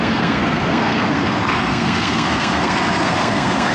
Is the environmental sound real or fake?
fake